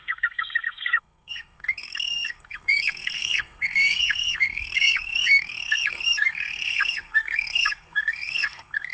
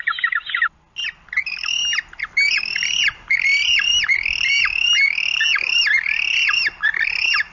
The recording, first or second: second